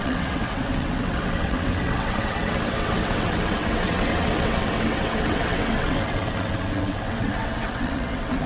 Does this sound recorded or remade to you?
remade